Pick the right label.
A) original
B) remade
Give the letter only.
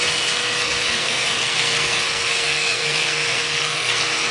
B